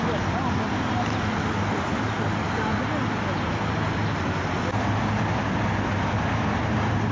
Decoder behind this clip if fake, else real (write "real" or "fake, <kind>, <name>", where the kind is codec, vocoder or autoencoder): real